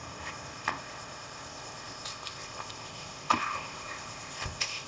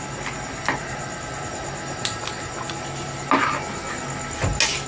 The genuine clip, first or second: second